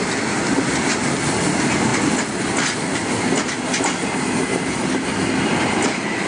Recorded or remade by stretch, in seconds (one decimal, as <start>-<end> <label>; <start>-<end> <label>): 0.0-6.3 recorded